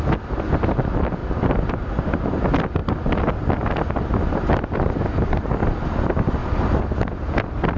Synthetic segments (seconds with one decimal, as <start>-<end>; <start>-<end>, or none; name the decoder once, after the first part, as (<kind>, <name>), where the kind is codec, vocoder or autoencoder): 6.4-6.9 (vocoder, BigVGAN v2)